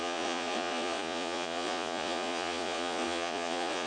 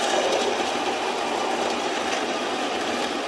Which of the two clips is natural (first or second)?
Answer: second